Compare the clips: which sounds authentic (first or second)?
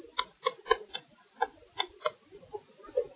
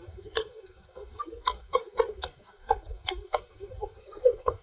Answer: first